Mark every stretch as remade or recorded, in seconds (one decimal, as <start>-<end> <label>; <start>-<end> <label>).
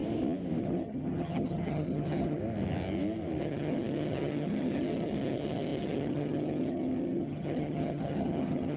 0.0-0.6 recorded; 0.6-2.4 remade; 2.4-3.4 recorded; 3.4-8.8 remade